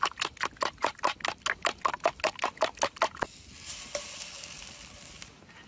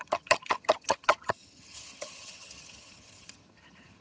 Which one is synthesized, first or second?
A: second